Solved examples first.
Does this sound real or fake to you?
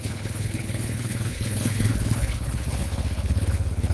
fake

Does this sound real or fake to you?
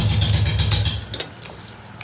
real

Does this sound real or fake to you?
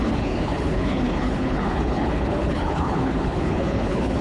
fake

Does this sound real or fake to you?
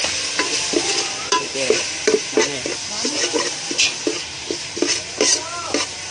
real